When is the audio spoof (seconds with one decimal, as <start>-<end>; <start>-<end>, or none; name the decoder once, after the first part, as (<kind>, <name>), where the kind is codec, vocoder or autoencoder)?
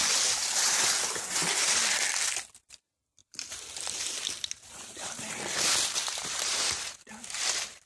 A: 3.2-5.4 (vocoder, BigVGAN v2); 6.2-7.1